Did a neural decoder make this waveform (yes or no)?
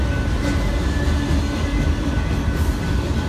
no